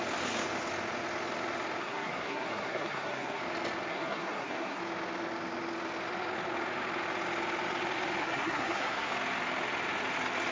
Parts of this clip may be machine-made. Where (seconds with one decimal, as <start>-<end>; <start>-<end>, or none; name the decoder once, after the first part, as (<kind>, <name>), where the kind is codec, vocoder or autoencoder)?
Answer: 1.8-3.4 (codec, SNAC); 3.9-4.8; 8.2-9.1